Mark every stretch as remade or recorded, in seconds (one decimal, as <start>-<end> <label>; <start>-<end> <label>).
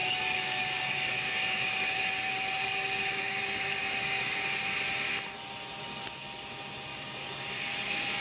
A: 0.0-4.4 remade; 4.4-6.9 recorded; 6.9-7.4 remade; 7.4-8.2 recorded